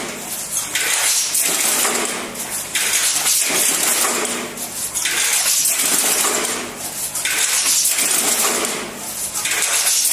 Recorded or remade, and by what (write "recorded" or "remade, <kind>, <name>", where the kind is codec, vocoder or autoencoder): recorded